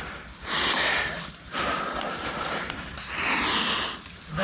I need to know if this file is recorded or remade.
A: recorded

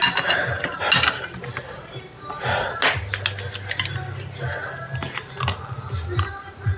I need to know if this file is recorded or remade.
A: recorded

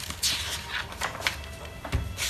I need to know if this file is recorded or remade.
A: recorded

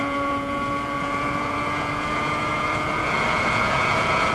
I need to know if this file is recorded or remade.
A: remade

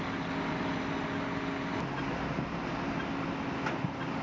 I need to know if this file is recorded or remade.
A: recorded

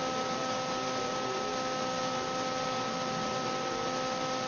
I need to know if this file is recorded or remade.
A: recorded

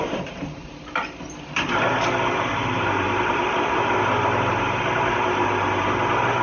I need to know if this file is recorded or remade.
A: remade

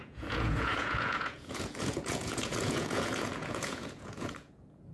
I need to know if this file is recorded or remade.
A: remade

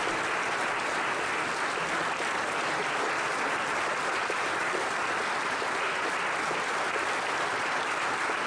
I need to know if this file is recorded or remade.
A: recorded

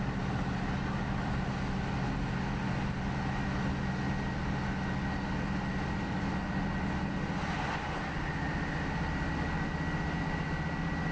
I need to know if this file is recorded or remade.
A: recorded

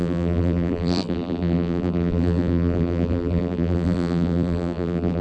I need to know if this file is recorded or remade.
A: remade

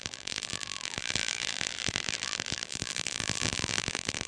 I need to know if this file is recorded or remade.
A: remade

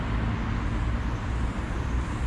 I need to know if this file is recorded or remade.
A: recorded